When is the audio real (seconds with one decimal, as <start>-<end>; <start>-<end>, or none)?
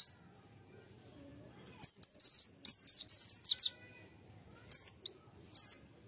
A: 0.0-6.1